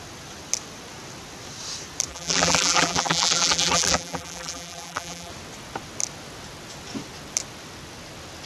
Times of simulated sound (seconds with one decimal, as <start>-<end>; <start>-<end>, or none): 2.1-5.3